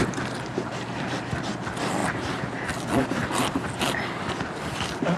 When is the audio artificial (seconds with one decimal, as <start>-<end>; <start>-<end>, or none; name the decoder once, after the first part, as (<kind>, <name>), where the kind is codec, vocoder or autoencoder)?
none